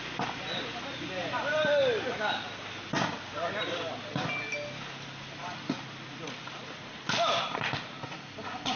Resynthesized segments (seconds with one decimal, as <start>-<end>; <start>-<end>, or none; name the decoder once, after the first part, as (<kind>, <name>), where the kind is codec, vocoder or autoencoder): 1.2-2.2 (vocoder, BigVGAN v2); 5.4-7.7